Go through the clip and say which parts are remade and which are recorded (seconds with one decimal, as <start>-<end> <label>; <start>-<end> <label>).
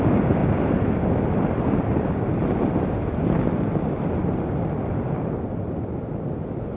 0.0-6.8 recorded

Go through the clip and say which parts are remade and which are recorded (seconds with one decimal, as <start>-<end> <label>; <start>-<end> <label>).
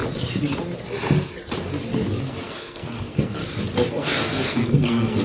0.0-2.2 recorded; 2.2-3.4 remade; 3.4-3.9 recorded; 3.9-5.2 remade